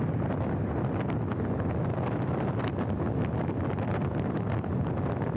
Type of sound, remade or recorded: recorded